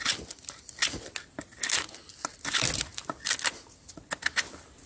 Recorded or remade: recorded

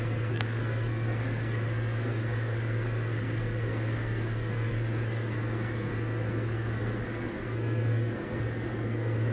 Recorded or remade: remade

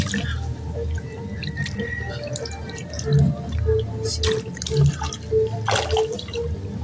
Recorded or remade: recorded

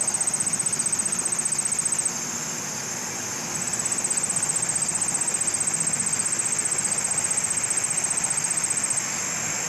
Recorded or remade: recorded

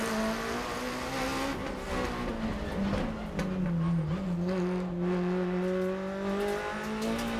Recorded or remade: recorded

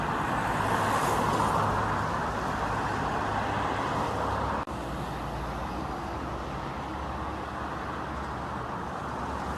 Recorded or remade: recorded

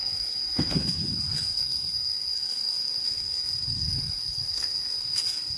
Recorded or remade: remade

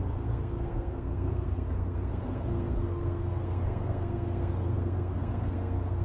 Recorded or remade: remade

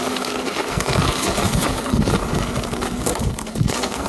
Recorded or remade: remade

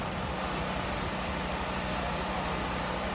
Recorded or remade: recorded